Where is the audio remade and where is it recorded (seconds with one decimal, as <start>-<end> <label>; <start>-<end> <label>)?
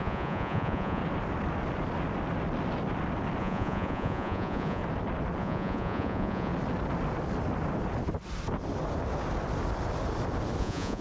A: 0.0-1.0 remade; 1.0-3.4 recorded; 3.4-4.8 remade; 4.8-5.4 recorded; 5.4-6.5 remade; 6.5-10.6 recorded; 10.6-11.0 remade